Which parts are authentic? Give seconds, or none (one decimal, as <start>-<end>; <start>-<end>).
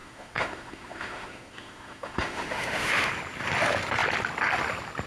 3.1-5.1